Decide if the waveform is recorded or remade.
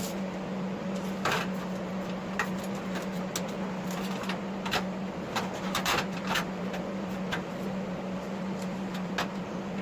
recorded